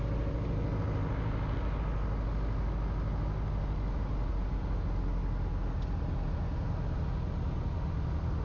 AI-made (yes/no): no